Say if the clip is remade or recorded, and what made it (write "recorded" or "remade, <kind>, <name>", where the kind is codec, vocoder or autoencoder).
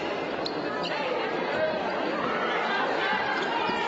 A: remade, vocoder, BigVGAN v2